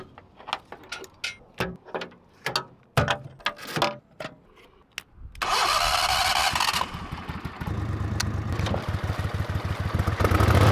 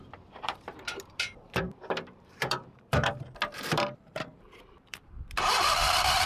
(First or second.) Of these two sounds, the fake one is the second